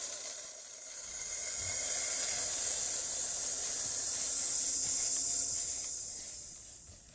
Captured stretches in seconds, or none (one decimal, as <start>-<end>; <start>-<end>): 0.0-7.1